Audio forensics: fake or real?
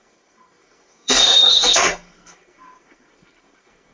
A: fake